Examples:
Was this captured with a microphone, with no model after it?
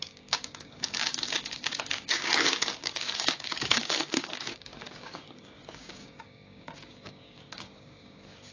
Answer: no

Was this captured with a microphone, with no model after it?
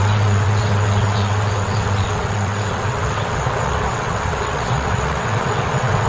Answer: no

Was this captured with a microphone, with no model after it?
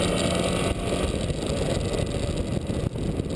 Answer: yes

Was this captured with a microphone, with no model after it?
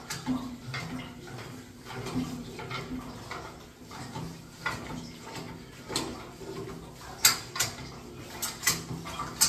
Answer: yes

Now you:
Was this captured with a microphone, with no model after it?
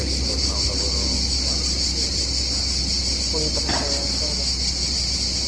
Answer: yes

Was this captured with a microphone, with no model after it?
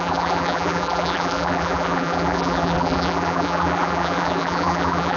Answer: no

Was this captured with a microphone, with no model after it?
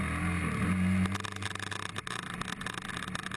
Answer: yes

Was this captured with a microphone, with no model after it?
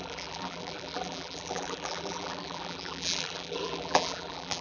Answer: no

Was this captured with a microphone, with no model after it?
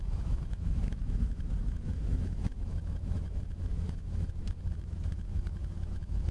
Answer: no